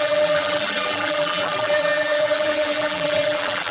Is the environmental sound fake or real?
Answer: fake